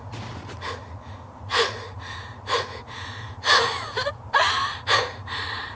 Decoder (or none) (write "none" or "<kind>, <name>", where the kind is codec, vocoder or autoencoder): vocoder, Vocos